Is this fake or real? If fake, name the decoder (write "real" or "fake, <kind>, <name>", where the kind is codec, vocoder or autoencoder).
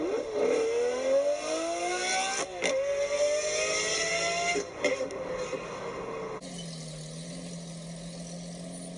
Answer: real